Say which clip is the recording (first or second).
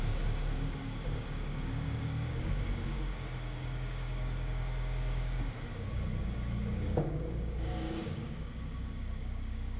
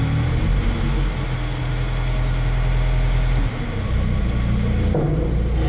second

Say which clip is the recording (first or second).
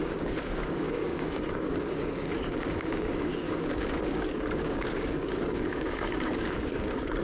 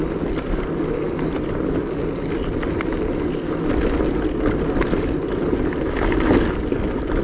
second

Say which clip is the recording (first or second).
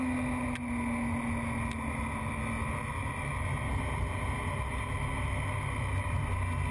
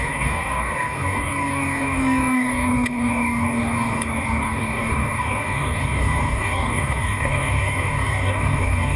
first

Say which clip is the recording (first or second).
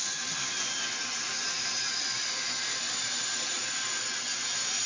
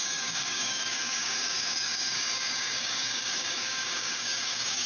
first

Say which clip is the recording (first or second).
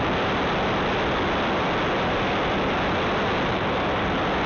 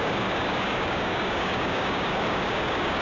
first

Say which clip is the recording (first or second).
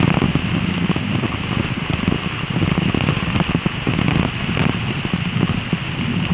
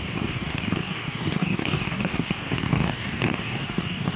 first